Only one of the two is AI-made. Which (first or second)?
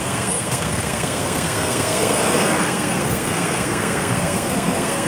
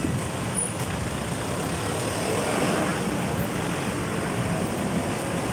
first